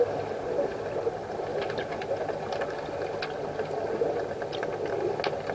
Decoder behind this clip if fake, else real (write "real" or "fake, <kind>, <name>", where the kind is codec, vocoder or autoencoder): real